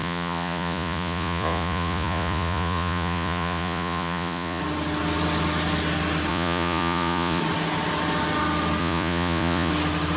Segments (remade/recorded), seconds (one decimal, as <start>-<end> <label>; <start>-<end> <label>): 0.0-4.6 remade; 4.6-6.3 recorded; 6.3-7.4 remade; 7.4-8.8 recorded; 8.8-9.7 remade; 9.7-10.2 recorded